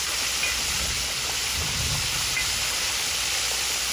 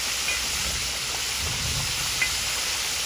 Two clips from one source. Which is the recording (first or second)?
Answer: second